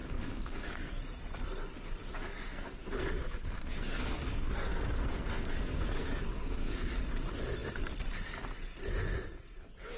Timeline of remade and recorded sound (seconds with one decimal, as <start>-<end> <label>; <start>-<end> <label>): 0.0-1.0 remade; 1.0-2.3 recorded; 2.3-6.9 remade; 6.9-10.0 recorded